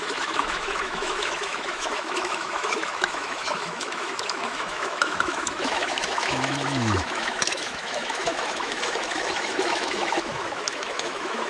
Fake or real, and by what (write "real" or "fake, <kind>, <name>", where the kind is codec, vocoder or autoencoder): fake, autoencoder, DAC-VAE